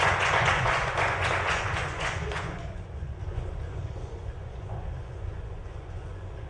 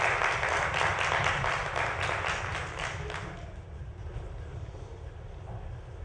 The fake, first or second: first